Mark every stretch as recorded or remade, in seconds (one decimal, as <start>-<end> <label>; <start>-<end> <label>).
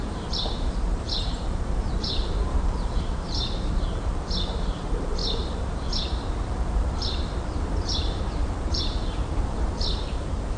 0.0-10.6 remade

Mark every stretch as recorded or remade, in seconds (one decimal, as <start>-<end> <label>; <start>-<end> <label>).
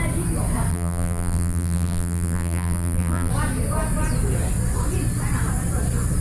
0.0-0.7 recorded; 0.7-3.3 remade; 3.3-6.2 recorded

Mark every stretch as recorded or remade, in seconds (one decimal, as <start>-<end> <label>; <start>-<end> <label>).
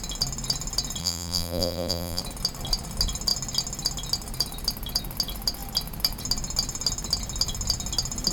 0.0-1.0 recorded; 1.0-2.2 remade; 2.2-8.3 recorded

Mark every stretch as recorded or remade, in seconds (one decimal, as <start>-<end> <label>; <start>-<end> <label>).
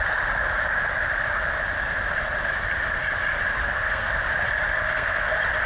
0.0-3.6 recorded; 3.6-4.2 remade; 4.2-4.7 recorded; 4.7-5.3 remade; 5.3-5.7 recorded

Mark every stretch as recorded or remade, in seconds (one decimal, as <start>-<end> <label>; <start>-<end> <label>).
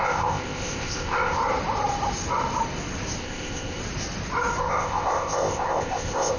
0.0-1.4 remade; 1.4-3.2 recorded; 3.2-3.8 remade; 3.8-4.6 recorded; 4.6-6.4 remade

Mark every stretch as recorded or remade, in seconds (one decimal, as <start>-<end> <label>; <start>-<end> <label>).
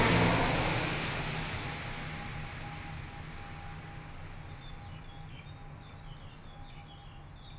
0.0-7.6 recorded